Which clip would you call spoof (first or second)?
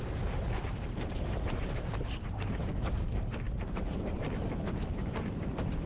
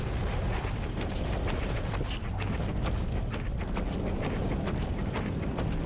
first